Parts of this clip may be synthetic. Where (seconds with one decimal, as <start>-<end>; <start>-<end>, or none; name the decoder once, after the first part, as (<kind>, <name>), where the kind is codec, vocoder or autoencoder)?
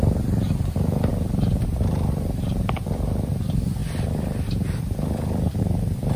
0.0-1.1 (vocoder, BigVGAN v2); 1.6-3.8; 5.6-6.2